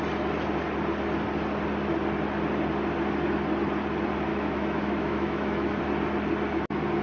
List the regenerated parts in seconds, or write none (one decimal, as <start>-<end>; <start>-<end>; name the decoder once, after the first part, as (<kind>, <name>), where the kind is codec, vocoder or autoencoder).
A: 4.3-5.8 (autoencoder, DAC-VAE)